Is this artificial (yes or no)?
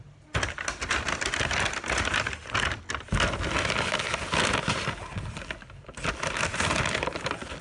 no